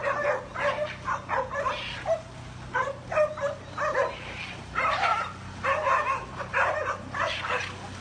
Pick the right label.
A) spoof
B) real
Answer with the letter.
B